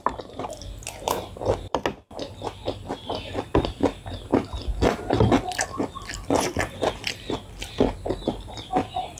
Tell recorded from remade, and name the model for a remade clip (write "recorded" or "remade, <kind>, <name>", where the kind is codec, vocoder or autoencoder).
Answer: recorded